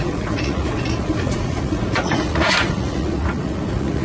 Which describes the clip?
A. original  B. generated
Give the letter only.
B